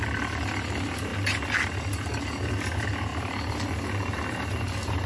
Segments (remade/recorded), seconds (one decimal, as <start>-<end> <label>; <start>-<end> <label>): 0.0-3.1 recorded; 3.1-5.1 remade